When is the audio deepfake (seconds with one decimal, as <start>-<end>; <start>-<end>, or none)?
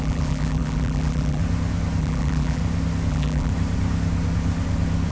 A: 0.0-1.4; 2.0-2.6; 3.1-3.5